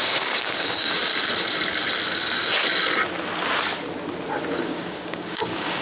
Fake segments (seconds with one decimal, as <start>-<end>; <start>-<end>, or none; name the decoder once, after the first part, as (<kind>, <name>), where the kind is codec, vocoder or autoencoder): 0.0-1.1 (codec, DAC); 4.6-5.8